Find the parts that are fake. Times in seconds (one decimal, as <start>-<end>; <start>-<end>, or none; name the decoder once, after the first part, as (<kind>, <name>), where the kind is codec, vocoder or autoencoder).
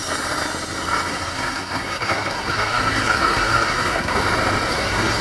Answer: 1.1-4.2 (codec, SNAC); 4.7-5.2